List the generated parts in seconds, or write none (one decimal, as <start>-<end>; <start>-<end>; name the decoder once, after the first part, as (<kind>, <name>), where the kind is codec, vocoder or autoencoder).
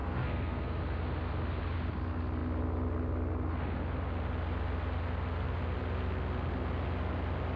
0.0-0.8 (codec, SNAC)